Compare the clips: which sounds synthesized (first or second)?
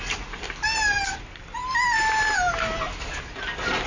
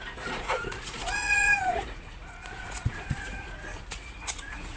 second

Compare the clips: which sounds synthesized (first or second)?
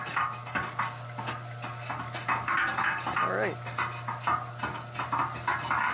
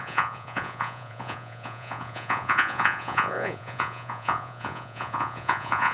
second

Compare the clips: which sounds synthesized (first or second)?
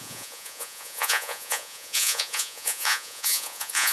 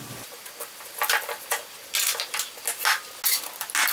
first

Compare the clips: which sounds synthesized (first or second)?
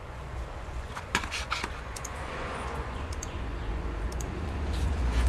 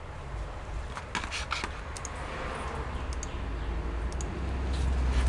first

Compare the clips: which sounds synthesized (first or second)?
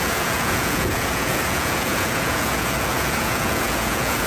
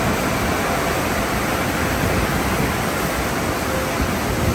first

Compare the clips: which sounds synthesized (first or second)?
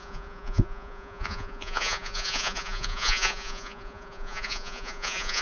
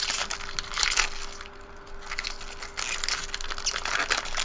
first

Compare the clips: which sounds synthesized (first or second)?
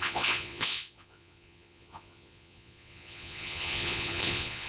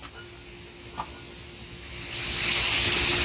first